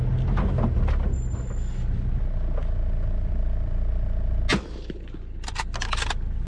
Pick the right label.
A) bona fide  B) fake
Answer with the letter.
A